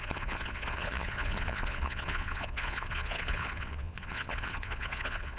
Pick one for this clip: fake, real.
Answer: fake